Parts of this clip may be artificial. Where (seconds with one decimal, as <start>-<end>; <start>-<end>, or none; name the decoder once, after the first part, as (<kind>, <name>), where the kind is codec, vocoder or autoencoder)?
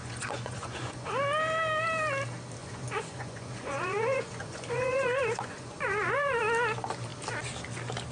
0.0-1.1 (vocoder, Vocos); 2.6-6.4